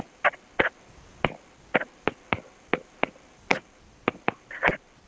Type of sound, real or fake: real